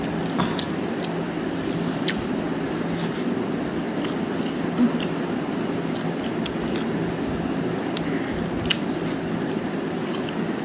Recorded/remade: recorded